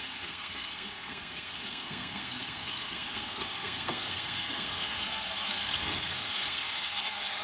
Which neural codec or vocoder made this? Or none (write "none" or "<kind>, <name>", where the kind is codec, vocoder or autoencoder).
codec, SNAC